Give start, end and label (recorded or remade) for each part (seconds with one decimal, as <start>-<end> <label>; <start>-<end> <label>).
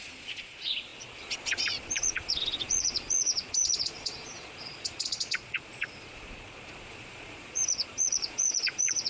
0.0-9.1 remade